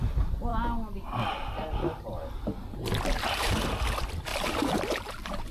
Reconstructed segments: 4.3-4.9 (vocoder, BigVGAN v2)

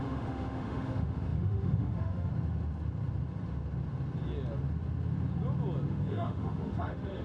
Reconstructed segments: 0.0-2.3 (autoencoder, DAC-VAE); 5.9-7.2